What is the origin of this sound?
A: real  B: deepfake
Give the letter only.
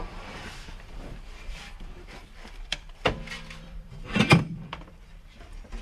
B